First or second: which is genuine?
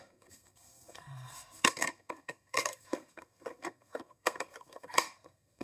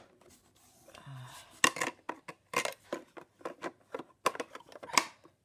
second